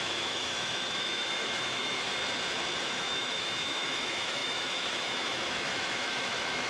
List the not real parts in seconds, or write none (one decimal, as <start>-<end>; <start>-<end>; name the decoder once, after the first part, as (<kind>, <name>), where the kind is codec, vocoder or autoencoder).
0.0-2.1 (autoencoder, DAC-VAE); 2.8-6.7